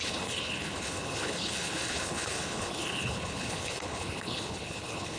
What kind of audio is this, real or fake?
fake